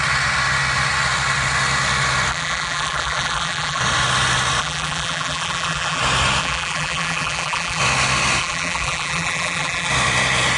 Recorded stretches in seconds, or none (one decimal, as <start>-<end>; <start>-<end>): 0.0-2.3; 3.8-4.6; 6.0-6.4; 7.8-8.4; 9.9-10.6